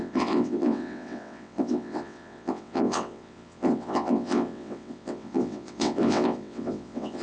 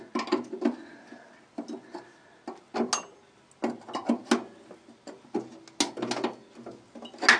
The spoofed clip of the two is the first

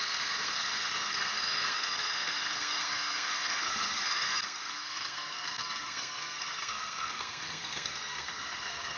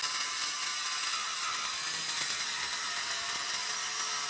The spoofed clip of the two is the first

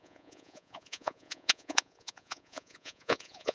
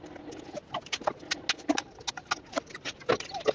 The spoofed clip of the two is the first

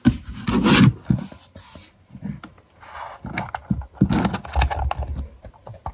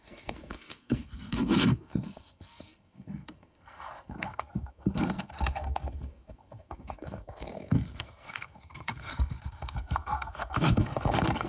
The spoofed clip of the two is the second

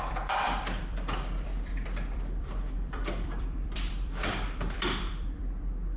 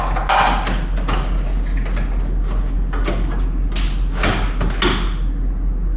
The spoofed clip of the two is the first